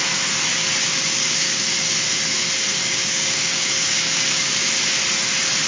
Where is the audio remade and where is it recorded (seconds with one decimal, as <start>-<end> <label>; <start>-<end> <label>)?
0.0-0.5 recorded; 0.5-1.6 remade; 1.6-2.8 recorded; 2.8-4.7 remade; 4.7-5.7 recorded